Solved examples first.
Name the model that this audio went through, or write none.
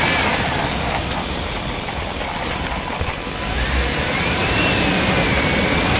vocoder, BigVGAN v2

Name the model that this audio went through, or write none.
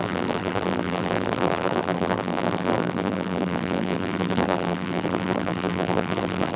vocoder, BigVGAN v2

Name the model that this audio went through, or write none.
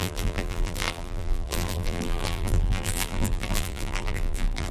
vocoder, BigVGAN v2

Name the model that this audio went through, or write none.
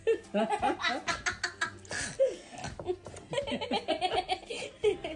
none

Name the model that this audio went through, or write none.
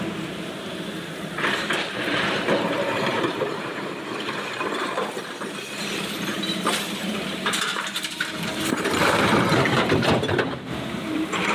vocoder, BigVGAN v2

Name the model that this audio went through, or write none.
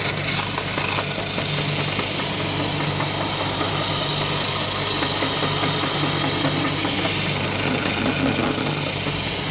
none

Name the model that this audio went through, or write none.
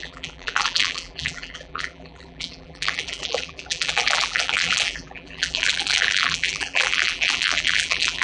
vocoder, BigVGAN v2